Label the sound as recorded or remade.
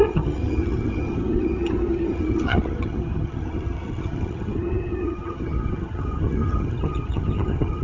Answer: remade